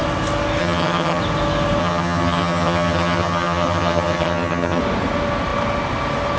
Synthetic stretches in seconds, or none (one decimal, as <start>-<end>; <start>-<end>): 0.6-1.2; 1.8-4.8